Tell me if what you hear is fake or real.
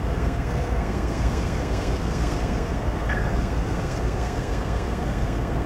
fake